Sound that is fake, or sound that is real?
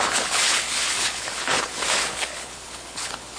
fake